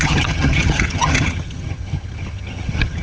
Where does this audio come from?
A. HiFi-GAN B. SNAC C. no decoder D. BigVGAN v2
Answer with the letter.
A